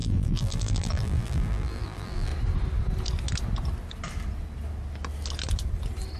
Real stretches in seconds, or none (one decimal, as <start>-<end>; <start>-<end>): 2.3-6.2